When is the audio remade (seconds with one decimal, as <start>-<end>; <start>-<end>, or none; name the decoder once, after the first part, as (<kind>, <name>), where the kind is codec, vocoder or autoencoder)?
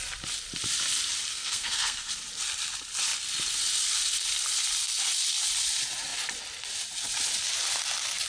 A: 1.3-2.1 (codec, SNAC)